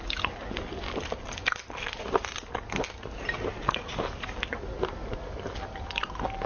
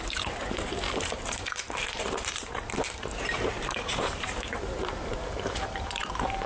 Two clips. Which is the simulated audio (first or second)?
second